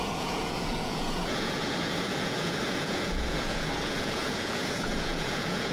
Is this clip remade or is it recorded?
remade